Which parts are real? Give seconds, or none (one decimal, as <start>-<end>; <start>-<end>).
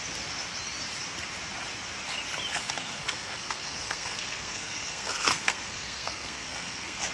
0.0-2.5